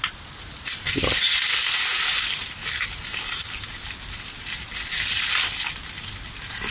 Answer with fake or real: real